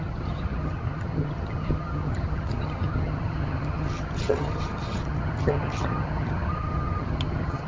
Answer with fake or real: fake